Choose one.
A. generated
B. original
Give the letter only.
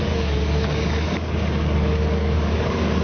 A